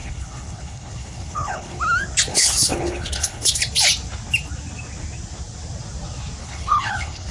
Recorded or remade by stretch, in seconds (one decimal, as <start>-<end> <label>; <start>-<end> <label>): 0.0-1.8 remade; 1.8-2.3 recorded; 2.3-3.6 remade; 3.6-6.4 recorded; 6.4-7.3 remade